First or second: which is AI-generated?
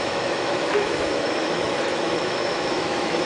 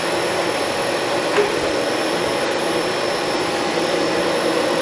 first